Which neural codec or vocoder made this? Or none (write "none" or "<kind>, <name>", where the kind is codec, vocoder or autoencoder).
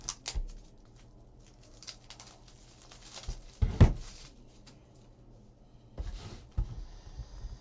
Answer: none